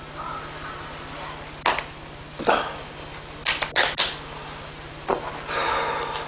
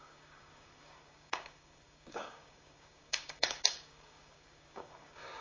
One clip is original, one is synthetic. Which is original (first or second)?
first